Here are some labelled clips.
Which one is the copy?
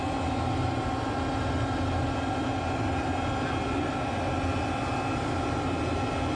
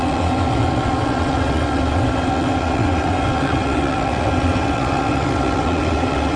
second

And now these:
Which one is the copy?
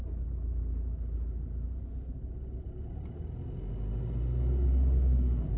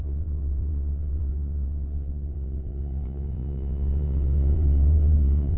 second